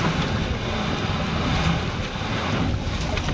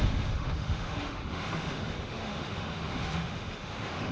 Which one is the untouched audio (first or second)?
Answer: first